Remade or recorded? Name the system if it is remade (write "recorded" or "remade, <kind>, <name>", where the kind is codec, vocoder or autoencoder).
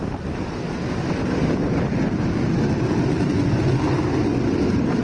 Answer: recorded